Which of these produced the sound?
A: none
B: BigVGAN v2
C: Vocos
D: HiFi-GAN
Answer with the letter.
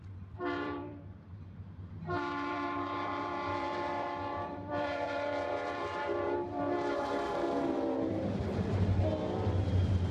B